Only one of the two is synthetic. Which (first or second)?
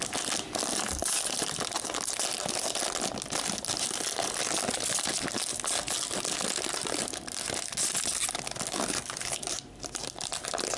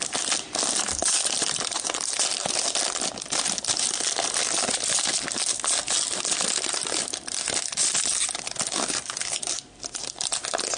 second